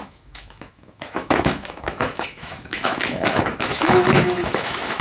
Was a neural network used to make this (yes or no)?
yes